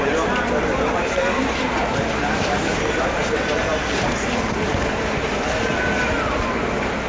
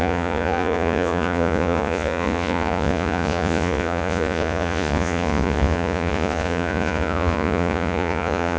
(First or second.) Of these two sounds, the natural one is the first